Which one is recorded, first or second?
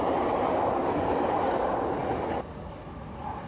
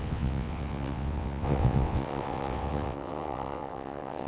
first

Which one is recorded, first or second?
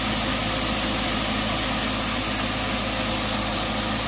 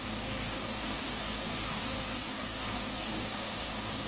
first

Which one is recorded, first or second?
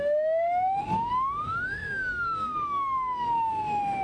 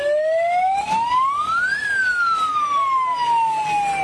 second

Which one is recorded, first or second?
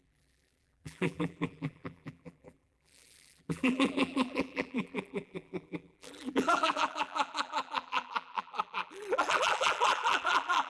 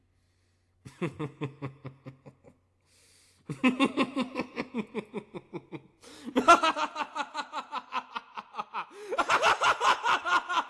second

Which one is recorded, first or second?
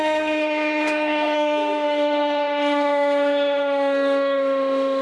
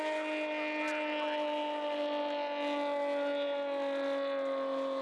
second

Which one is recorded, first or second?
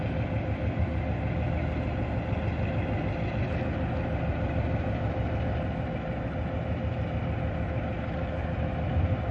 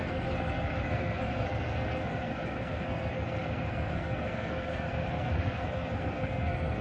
first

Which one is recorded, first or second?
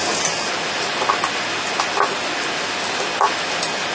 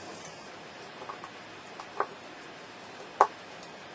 first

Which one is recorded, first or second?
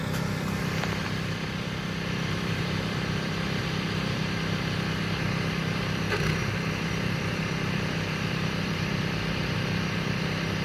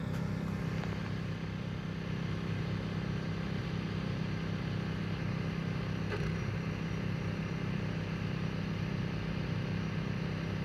second